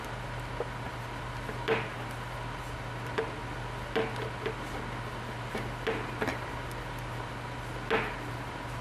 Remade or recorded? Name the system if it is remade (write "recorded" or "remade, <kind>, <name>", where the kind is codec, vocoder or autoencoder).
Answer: recorded